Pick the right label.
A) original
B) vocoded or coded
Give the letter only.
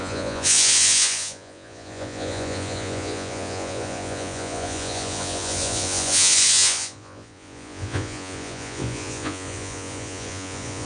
B